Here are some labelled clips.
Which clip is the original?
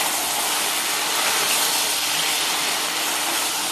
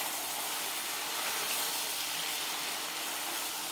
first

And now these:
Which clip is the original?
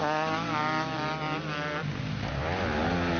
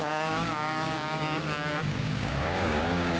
first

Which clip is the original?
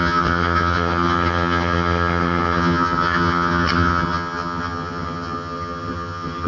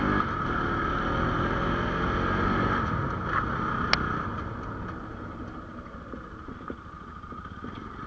second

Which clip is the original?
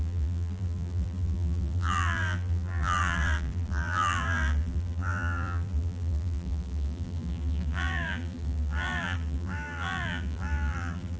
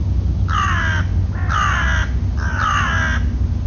second